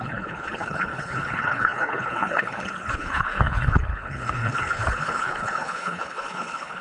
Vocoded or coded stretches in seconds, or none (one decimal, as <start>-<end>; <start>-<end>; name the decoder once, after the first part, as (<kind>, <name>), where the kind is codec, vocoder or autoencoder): 0.0-6.8 (codec, HILCodec)